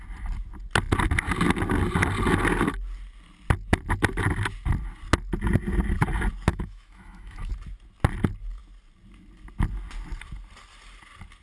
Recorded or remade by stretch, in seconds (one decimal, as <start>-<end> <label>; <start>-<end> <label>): 0.0-6.5 recorded; 6.5-7.5 remade; 7.5-11.4 recorded